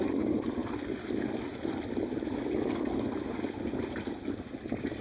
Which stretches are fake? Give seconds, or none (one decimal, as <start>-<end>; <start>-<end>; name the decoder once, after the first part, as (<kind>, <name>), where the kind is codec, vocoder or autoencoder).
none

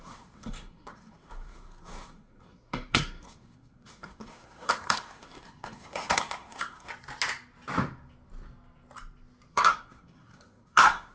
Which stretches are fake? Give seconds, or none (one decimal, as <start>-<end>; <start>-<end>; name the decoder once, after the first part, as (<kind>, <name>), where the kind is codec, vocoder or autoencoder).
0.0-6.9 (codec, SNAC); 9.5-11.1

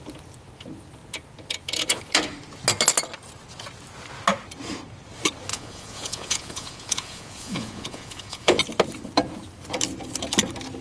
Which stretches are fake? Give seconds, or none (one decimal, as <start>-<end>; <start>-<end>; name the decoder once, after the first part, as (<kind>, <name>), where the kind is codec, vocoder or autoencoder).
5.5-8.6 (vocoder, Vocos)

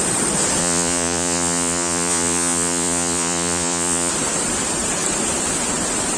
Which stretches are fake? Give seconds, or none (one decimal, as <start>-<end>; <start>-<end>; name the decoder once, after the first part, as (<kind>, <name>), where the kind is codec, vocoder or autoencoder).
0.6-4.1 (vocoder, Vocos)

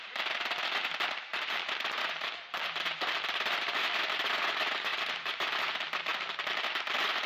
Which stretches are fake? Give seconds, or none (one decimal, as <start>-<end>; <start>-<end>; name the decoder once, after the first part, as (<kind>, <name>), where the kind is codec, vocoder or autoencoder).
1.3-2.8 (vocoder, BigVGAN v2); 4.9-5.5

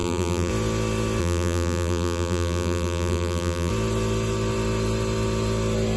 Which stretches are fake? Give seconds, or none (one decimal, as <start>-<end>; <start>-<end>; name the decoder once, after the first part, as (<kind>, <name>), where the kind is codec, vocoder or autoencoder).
0.0-0.5 (vocoder, BigVGAN v2); 1.2-3.7